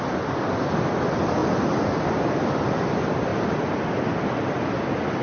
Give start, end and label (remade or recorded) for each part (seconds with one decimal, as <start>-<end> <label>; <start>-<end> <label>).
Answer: 0.0-5.2 recorded